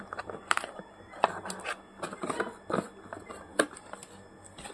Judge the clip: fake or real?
real